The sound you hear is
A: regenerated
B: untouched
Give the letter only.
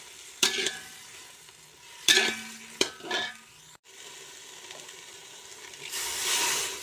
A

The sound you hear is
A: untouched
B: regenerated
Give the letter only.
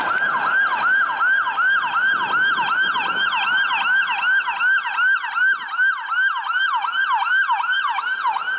A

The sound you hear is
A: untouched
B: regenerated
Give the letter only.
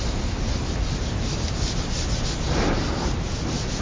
A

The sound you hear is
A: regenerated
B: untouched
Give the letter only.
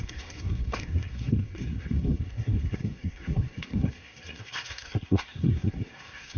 A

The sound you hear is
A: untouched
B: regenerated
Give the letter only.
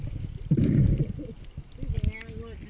A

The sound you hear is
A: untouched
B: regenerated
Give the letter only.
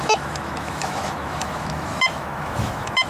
B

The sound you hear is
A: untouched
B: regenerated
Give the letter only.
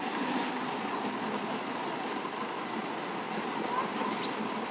A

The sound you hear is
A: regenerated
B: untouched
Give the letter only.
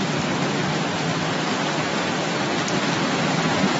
A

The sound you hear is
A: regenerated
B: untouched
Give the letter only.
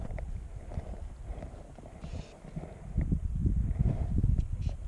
B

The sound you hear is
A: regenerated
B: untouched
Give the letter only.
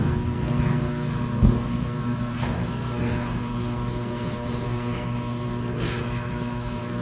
A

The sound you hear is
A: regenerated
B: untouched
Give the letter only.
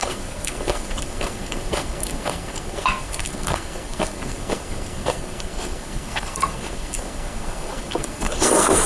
A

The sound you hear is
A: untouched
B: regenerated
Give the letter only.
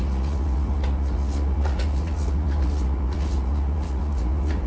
B